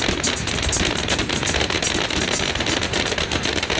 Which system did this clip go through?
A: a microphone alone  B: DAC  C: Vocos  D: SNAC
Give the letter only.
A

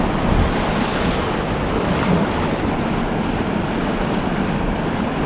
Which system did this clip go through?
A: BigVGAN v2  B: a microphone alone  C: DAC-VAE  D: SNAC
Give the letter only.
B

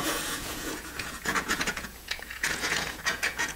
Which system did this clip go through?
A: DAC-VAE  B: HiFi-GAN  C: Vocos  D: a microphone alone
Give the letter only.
C